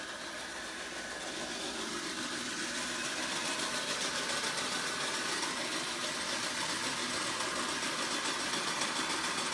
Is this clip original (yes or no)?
yes